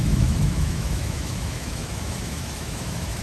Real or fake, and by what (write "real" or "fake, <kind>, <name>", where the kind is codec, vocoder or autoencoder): fake, autoencoder, DAC-VAE